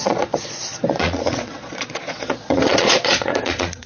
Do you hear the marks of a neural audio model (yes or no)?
yes